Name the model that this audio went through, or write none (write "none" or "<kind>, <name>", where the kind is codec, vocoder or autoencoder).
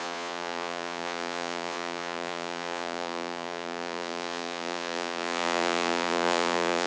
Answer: vocoder, Vocos